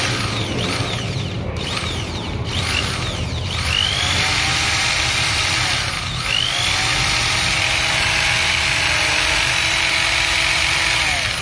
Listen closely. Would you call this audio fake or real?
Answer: real